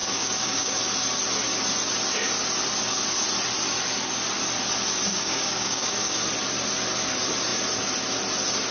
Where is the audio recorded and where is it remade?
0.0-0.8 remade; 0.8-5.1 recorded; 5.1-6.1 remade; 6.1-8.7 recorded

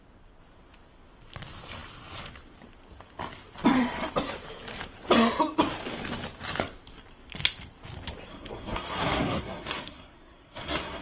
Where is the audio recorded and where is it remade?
0.0-8.3 recorded; 8.3-11.0 remade

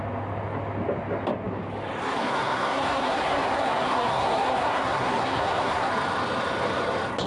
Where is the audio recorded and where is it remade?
0.0-2.2 recorded; 2.2-5.9 remade; 5.9-7.3 recorded

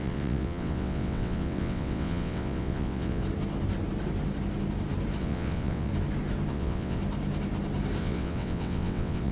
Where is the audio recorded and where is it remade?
0.0-3.2 remade; 3.2-5.2 recorded; 5.2-5.9 remade; 5.9-6.5 recorded; 6.5-7.0 remade; 7.0-8.0 recorded; 8.0-9.3 remade

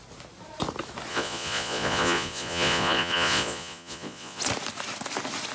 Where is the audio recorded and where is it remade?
0.0-1.1 recorded; 1.1-4.4 remade; 4.4-5.5 recorded

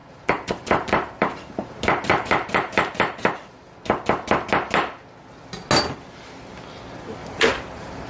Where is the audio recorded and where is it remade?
0.0-1.7 remade; 1.7-2.1 recorded; 2.1-3.6 remade; 3.6-7.2 recorded; 7.2-8.1 remade

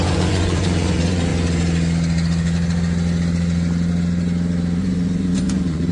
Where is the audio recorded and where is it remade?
0.0-1.3 remade; 1.3-4.8 recorded; 4.8-5.9 remade

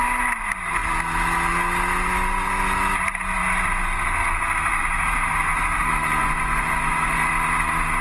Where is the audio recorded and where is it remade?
0.0-6.2 recorded; 6.2-7.3 remade; 7.3-8.0 recorded